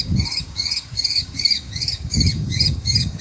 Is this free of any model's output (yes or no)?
no